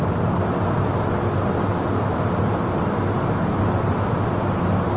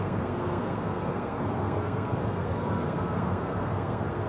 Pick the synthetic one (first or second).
second